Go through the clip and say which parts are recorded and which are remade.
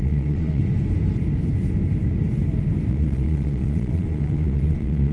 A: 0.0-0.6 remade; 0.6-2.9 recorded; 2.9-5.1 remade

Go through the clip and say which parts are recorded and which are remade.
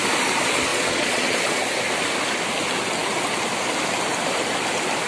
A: 0.0-0.7 recorded; 0.7-1.6 remade; 1.6-5.1 recorded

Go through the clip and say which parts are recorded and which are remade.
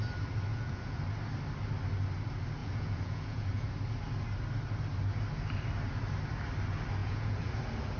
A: 0.0-0.5 recorded; 0.5-1.0 remade; 1.0-2.6 recorded; 2.6-3.7 remade; 3.7-7.0 recorded; 7.0-7.5 remade; 7.5-8.0 recorded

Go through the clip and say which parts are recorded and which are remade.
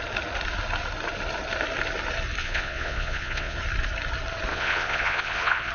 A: 0.0-2.4 recorded; 2.4-3.6 remade; 3.6-4.5 recorded; 4.5-5.7 remade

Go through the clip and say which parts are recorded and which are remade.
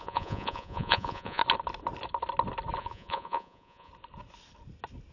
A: 0.0-1.4 remade; 1.4-2.8 recorded; 2.8-3.9 remade; 3.9-5.1 recorded